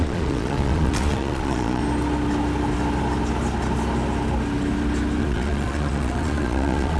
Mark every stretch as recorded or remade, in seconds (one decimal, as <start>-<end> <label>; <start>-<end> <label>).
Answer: 0.0-1.8 remade; 1.8-5.2 recorded; 5.2-7.0 remade

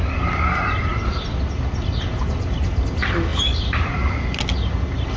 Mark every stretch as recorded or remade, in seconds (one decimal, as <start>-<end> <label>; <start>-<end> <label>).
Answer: 0.0-5.2 recorded

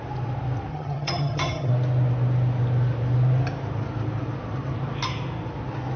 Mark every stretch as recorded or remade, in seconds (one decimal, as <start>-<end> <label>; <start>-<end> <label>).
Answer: 0.0-0.7 recorded; 0.7-1.7 remade; 1.7-6.0 recorded

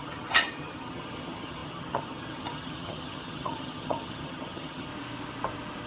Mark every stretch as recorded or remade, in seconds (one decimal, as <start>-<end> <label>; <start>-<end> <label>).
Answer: 0.0-4.9 remade; 4.9-5.9 recorded